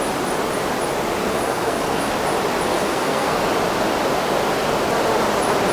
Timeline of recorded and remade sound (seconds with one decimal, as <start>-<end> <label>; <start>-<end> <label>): 0.0-1.2 recorded; 1.2-2.1 remade; 2.1-2.7 recorded; 2.7-3.4 remade; 3.4-5.7 recorded